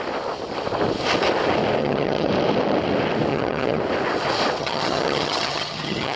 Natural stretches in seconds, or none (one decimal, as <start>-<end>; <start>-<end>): 0.0-1.8; 2.3-3.3; 3.8-4.6